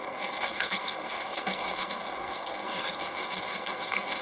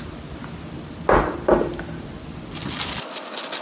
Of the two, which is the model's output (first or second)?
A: first